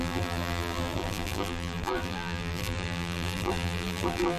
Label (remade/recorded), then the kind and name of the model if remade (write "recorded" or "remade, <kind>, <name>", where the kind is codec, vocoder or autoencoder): remade, vocoder, BigVGAN v2